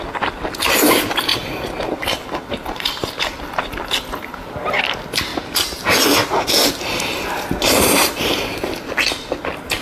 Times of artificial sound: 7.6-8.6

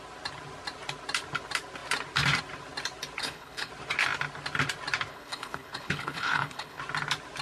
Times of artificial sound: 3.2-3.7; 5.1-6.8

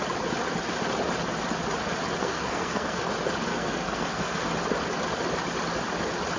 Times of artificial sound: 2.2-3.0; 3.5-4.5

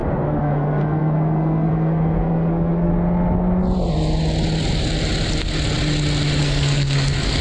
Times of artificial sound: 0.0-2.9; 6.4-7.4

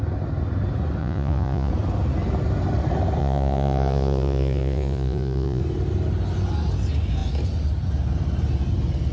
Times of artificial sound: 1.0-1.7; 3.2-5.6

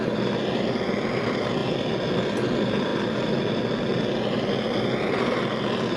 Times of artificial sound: none

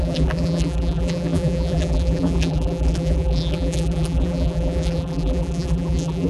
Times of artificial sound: 0.0-6.3

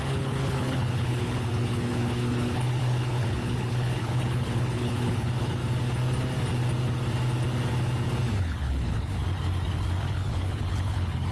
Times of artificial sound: 0.0-5.6; 8.4-9.2; 10.1-11.3